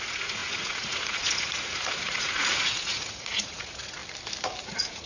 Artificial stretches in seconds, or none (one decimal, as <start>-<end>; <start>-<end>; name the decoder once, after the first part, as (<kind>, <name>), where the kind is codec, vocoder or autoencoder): 0.0-4.0 (vocoder, Vocos); 4.6-5.1